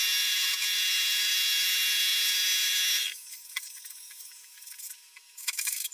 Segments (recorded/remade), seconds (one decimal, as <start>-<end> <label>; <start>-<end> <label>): 0.0-5.9 remade